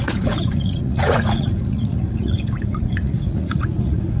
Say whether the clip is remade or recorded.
remade